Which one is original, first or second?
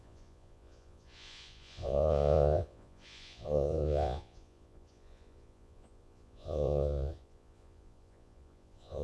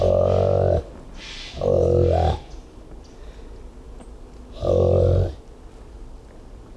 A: second